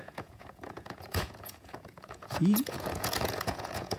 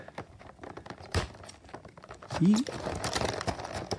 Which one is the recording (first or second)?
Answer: second